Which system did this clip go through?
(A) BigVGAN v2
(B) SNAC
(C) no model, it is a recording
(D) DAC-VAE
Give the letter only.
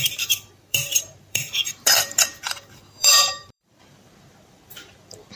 A